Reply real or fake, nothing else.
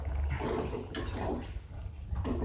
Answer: real